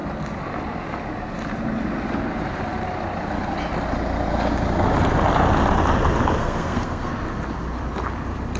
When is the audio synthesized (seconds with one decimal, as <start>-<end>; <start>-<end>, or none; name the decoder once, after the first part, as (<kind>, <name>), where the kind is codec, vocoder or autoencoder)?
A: 6.4-7.1 (codec, SNAC)